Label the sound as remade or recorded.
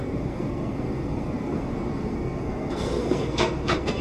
remade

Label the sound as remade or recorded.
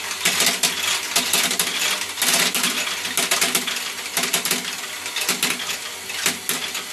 recorded